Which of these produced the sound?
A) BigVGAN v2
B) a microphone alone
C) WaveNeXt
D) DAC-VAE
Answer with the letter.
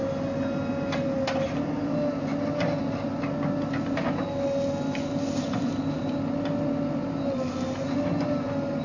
B